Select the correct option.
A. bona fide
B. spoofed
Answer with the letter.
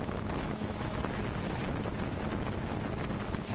B